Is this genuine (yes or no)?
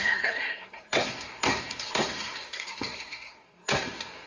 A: no